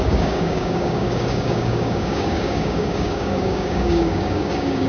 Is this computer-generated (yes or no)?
yes